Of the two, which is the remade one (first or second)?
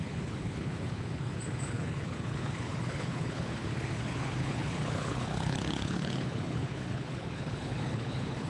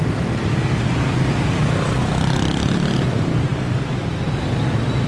first